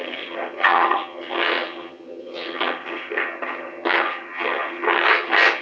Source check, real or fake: fake